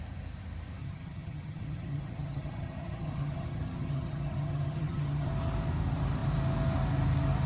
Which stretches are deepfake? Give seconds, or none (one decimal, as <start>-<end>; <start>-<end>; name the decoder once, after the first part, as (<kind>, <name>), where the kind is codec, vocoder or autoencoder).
0.8-5.3 (vocoder, HiFi-GAN)